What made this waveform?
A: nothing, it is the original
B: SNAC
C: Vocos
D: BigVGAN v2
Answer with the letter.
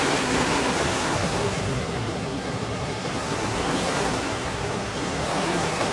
B